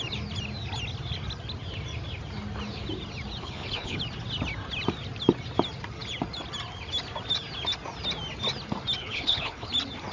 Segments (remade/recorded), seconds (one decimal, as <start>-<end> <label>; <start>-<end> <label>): 0.0-3.4 recorded; 3.4-4.0 remade; 4.0-9.0 recorded; 9.0-9.7 remade; 9.7-10.1 recorded